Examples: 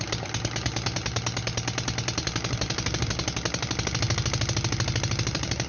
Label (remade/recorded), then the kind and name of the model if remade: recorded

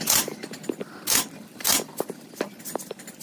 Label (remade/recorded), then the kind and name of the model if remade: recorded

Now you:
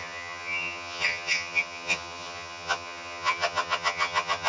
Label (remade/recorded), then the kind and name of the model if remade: remade, vocoder, HiFi-GAN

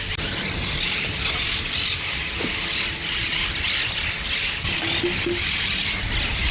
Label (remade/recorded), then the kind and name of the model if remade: recorded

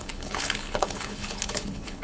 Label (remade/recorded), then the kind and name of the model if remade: remade, codec, HILCodec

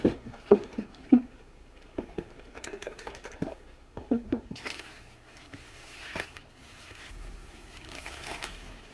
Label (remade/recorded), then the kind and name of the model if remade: remade, codec, SNAC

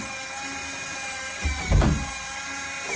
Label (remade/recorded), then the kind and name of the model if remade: recorded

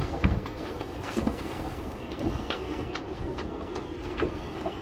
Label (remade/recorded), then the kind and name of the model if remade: remade, codec, SNAC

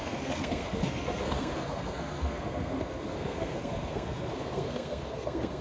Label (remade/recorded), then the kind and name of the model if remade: remade, codec, SNAC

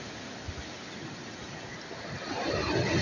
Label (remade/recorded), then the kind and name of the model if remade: recorded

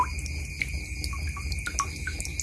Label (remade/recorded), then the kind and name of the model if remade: recorded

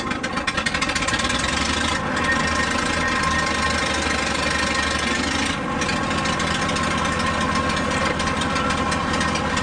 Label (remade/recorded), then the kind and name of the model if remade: recorded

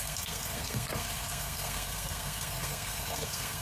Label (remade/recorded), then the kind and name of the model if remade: remade, codec, SNAC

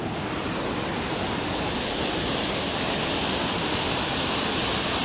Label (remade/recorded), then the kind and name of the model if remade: recorded